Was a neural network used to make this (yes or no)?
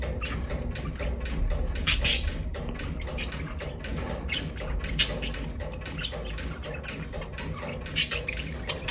no